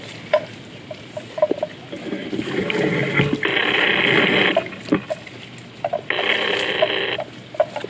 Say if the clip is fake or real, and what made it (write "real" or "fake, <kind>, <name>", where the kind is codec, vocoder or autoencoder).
real